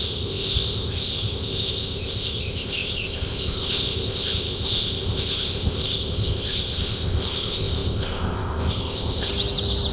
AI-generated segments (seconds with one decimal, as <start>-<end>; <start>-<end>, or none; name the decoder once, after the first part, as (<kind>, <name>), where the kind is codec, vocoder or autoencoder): 0.0-9.3 (codec, ZipCodec)